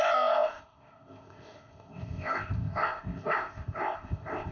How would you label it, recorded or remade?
remade